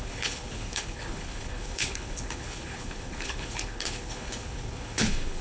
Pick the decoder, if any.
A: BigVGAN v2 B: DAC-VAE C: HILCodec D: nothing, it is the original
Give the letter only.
C